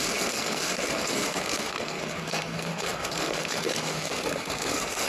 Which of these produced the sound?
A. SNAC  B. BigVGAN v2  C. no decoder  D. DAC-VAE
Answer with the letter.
A